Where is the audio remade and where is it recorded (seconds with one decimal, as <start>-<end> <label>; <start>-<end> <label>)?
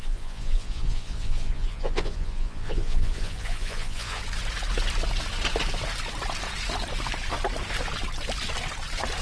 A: 0.0-4.2 remade; 4.2-9.2 recorded